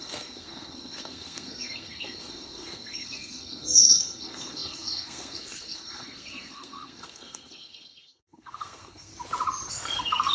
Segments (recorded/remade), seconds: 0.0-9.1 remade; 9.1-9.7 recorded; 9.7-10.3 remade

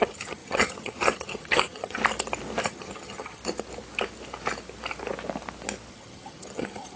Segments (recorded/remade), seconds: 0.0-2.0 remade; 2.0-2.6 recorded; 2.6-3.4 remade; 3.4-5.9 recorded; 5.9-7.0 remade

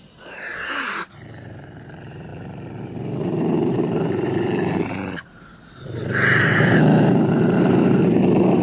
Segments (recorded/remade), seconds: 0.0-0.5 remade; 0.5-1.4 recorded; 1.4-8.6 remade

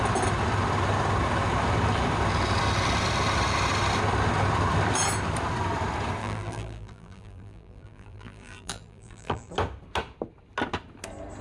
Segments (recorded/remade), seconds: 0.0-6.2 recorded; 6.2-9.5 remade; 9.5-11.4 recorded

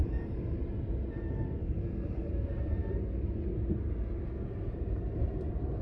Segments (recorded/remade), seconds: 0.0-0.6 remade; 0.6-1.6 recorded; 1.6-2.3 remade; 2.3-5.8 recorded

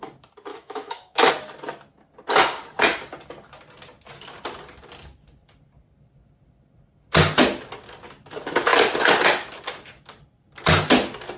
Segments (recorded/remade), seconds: 0.0-0.5 recorded; 0.5-1.3 remade; 1.3-11.4 recorded

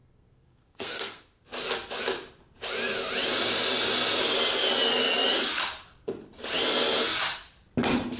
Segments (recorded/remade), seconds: 0.0-1.5 remade; 1.5-8.2 recorded

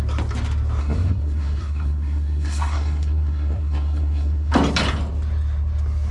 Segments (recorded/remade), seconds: 0.0-0.8 recorded; 0.8-4.5 remade; 4.5-6.1 recorded